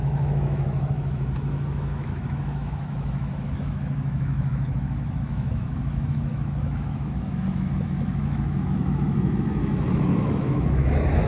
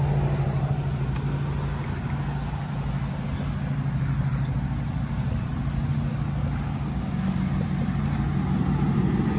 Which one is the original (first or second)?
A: second